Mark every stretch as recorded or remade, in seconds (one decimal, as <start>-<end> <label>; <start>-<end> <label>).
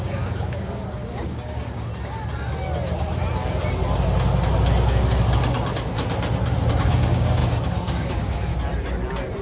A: 0.0-1.9 remade; 1.9-6.7 recorded; 6.7-8.5 remade; 8.5-9.4 recorded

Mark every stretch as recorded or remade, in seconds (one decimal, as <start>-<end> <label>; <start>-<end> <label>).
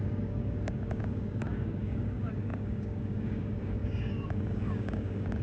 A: 0.0-5.4 remade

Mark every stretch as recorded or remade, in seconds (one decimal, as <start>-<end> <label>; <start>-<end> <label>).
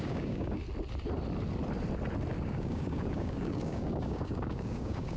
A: 0.0-0.6 remade; 0.6-2.4 recorded; 2.4-5.2 remade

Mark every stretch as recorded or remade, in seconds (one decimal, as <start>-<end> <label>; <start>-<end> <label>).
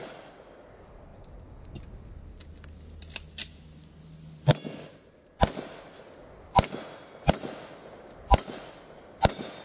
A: 0.0-9.6 recorded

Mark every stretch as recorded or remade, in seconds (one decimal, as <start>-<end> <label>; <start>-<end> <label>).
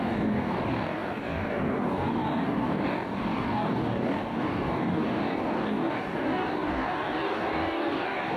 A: 0.0-8.4 remade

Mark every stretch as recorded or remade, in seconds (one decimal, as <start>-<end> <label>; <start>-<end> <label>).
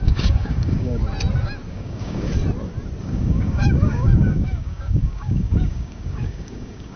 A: 0.0-1.0 remade; 1.0-1.7 recorded; 1.7-2.3 remade; 2.3-3.0 recorded; 3.0-7.0 remade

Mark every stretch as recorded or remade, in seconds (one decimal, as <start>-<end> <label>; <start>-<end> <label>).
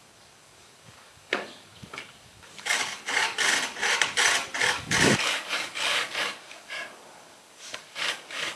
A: 0.0-3.5 remade; 3.5-4.6 recorded; 4.6-8.6 remade